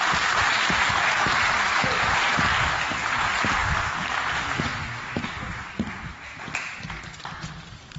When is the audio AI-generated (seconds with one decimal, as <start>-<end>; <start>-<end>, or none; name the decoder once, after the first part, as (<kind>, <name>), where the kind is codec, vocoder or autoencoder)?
none